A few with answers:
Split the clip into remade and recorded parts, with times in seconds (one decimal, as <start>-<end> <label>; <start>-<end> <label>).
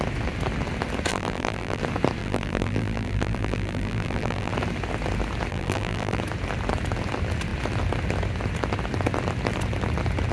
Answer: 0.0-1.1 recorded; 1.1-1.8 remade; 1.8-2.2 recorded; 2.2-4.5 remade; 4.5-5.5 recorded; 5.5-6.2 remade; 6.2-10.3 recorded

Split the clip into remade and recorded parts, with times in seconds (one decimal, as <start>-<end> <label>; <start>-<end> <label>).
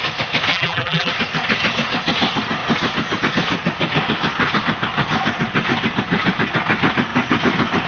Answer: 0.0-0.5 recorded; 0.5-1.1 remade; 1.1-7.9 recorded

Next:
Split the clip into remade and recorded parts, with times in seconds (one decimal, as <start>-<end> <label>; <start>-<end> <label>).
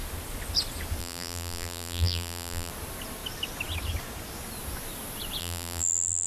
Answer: 0.0-1.0 recorded; 1.0-2.7 remade; 2.7-5.4 recorded; 5.4-6.3 remade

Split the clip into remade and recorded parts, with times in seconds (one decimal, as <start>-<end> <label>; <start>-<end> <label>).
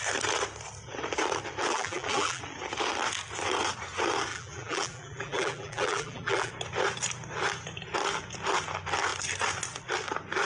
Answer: 0.0-1.7 recorded; 1.7-2.4 remade; 2.4-4.3 recorded; 4.3-6.5 remade; 6.5-10.5 recorded